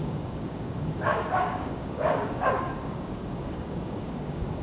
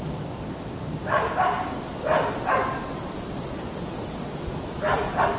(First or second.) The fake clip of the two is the first